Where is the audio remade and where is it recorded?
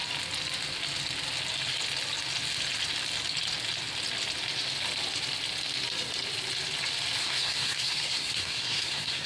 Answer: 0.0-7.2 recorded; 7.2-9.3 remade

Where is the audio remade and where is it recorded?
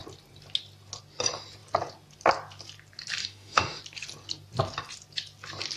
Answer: 0.0-3.2 recorded; 3.2-3.8 remade; 3.8-5.8 recorded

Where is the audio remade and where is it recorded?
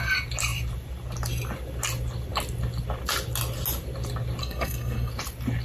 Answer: 0.0-4.4 recorded; 4.4-5.1 remade; 5.1-5.6 recorded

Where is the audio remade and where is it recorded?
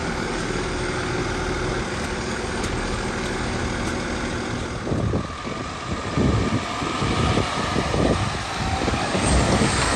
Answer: 0.0-1.2 remade; 1.2-1.9 recorded; 1.9-3.6 remade; 3.6-8.6 recorded; 8.6-10.0 remade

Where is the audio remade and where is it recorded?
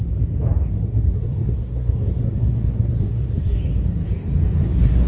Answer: 0.0-0.7 recorded; 0.7-3.6 remade; 3.6-4.6 recorded; 4.6-5.1 remade